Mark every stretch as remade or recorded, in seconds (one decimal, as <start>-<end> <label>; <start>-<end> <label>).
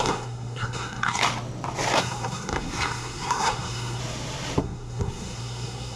0.0-1.2 remade; 1.2-2.0 recorded; 2.0-4.0 remade; 4.0-4.6 recorded; 4.6-6.0 remade